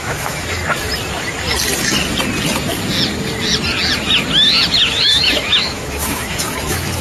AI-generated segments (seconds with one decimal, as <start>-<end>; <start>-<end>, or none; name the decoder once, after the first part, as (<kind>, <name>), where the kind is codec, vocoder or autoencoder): 0.0-0.6 (autoencoder, DAC-VAE); 4.8-7.0

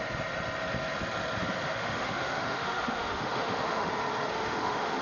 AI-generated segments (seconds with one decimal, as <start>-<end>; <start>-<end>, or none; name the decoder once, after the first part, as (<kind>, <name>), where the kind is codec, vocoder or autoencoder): 1.7-3.9 (autoencoder, DAC-VAE); 4.3-5.0